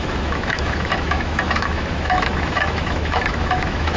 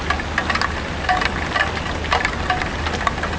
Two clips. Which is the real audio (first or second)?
second